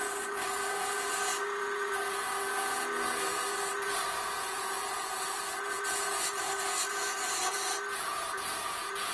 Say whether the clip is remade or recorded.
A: remade